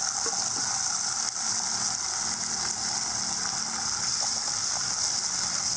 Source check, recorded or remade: recorded